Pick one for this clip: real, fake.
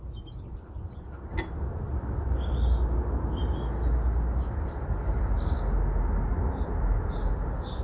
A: real